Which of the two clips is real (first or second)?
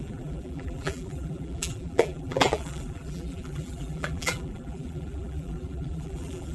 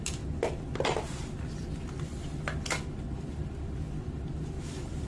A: second